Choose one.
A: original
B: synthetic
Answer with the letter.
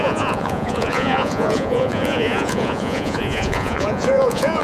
B